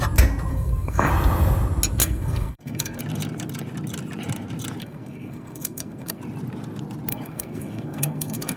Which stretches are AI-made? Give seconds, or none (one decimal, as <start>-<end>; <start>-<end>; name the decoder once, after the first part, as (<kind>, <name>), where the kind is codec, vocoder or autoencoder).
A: 0.5-1.1 (codec, SNAC); 2.0-3.0; 4.8-6.2; 7.1-8.6